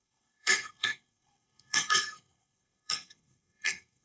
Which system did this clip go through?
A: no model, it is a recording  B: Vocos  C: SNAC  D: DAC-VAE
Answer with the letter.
C